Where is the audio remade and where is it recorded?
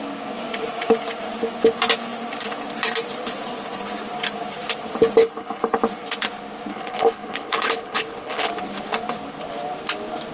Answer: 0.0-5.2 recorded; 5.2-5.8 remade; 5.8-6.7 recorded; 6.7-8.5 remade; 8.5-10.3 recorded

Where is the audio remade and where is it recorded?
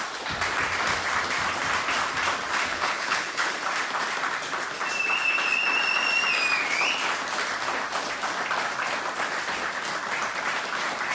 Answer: 0.0-2.7 recorded; 2.7-3.6 remade; 3.6-11.1 recorded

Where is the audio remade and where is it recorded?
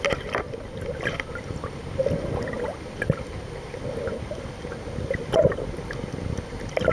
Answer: 0.0-6.9 recorded